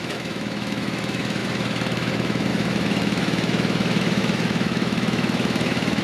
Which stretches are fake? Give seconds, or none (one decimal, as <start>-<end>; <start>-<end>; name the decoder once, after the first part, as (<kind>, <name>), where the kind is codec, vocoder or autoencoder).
0.0-6.0 (autoencoder, DAC-VAE)